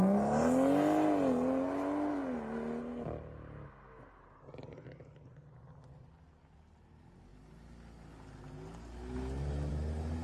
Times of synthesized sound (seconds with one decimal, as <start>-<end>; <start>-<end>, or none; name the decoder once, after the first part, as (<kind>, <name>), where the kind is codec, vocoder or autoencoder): none